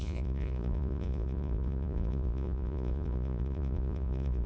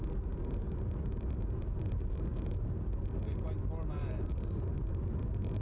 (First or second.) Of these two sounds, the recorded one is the second